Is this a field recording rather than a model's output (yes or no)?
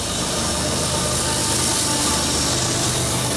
yes